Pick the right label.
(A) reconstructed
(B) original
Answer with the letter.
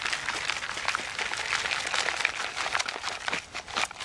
B